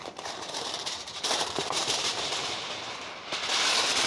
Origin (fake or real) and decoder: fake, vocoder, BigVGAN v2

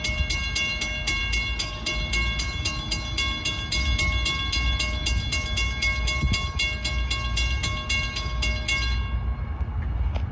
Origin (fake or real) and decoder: real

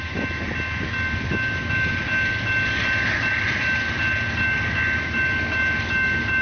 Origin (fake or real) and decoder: real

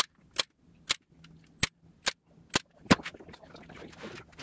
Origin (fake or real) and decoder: real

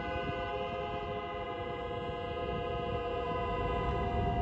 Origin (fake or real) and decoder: real